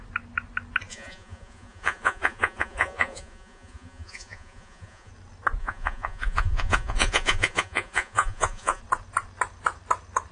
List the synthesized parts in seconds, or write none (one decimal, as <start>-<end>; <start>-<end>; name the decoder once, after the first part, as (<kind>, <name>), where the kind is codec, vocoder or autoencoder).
0.9-5.1 (vocoder, Vocos); 5.6-8.8

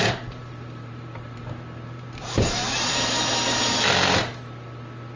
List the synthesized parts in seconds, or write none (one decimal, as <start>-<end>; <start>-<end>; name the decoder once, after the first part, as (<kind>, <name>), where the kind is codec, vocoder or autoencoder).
0.0-3.1 (vocoder, BigVGAN v2)

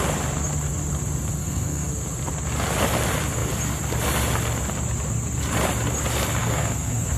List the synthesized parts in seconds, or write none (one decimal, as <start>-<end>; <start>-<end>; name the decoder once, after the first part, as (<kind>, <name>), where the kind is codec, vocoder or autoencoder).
1.4-1.9 (codec, SNAC); 6.4-7.2

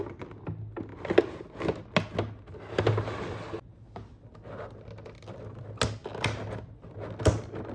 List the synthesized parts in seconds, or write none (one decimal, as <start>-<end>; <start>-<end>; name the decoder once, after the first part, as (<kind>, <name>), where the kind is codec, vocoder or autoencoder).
none